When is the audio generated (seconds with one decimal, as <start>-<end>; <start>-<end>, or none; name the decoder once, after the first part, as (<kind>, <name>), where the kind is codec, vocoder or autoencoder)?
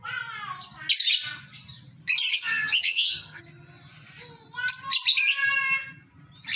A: 2.3-3.4 (vocoder, HiFi-GAN)